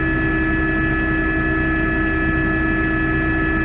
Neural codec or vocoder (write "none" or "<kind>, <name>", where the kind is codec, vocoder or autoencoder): none